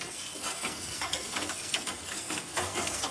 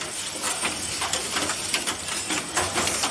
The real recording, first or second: second